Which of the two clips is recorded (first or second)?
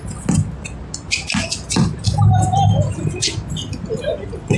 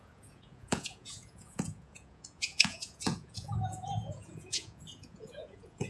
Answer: first